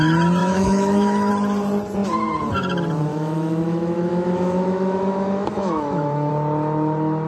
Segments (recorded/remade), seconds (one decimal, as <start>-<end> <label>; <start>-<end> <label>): 0.0-0.4 recorded; 0.4-1.3 remade; 1.3-3.1 recorded; 3.1-6.3 remade; 6.3-7.3 recorded